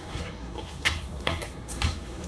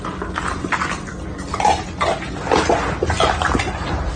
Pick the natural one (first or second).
second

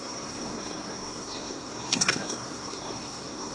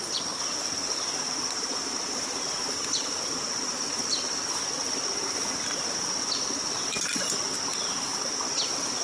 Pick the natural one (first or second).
second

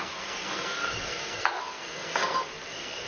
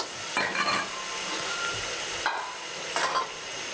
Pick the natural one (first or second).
second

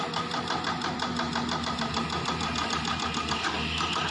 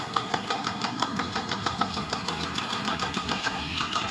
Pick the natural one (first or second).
first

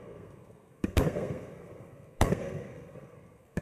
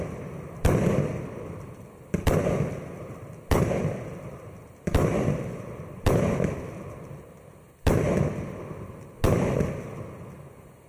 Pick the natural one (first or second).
second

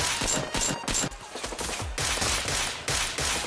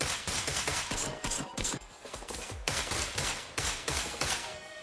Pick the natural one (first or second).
first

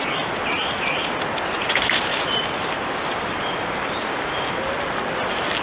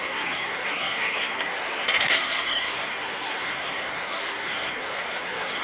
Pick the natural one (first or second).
first